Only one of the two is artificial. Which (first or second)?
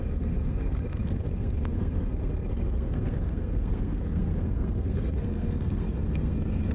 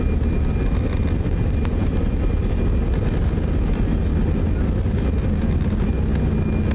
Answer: first